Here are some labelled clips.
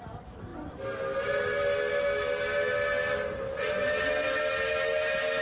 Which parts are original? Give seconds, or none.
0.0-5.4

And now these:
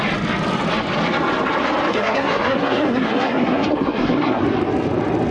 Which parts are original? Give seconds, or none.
0.0-1.9; 4.4-5.3

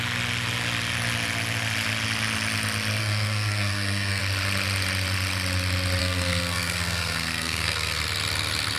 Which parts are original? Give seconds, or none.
0.0-3.0; 4.2-6.0; 8.0-8.8

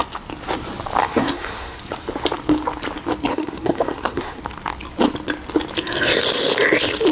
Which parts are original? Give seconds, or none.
0.0-1.0; 1.8-3.3; 4.4-7.1

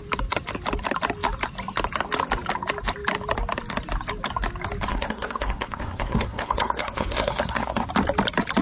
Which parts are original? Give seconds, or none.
0.0-4.9; 7.9-8.6

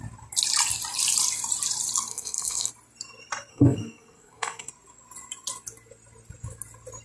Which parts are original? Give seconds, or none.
0.0-2.1; 2.7-3.5; 4.7-7.0

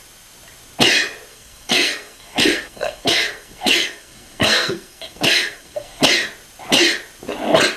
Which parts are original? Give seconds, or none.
0.0-1.3; 6.0-7.8

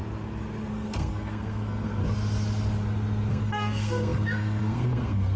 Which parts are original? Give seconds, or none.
0.0-0.7; 2.0-3.3